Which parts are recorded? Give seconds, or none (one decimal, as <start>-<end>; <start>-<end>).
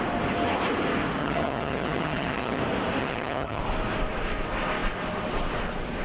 0.0-1.2; 2.6-3.0; 3.6-6.0